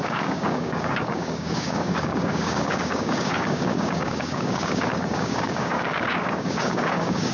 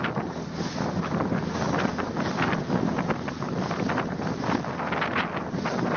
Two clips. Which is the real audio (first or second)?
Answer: second